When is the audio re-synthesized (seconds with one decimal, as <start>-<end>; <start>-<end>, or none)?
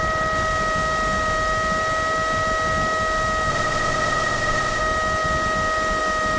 3.5-4.8